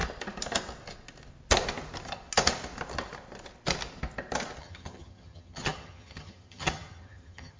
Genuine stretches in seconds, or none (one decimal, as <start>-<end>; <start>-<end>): 0.0-4.6

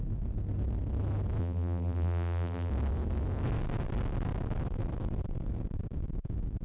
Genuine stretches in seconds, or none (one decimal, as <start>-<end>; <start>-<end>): 0.0-1.4; 2.7-6.6

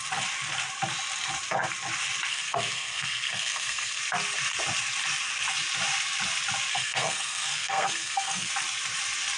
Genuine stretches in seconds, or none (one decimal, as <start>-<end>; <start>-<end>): 0.0-2.3; 4.0-6.7; 8.5-9.4

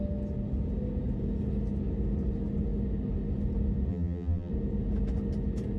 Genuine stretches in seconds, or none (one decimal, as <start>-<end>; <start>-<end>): 0.0-3.9; 4.5-5.8

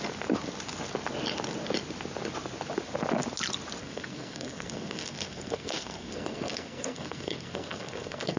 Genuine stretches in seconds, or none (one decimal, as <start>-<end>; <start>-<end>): 0.0-3.8

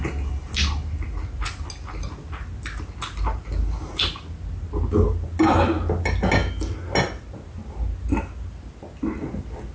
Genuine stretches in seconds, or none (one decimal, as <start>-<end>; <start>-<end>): 0.0-9.7

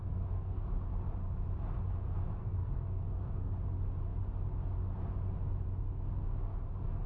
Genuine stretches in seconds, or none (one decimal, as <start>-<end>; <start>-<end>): 0.7-2.4; 3.5-7.1